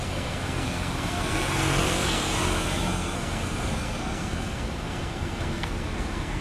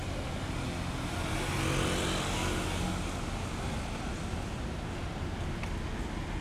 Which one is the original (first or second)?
second